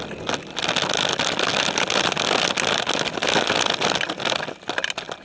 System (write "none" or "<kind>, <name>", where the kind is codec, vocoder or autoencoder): none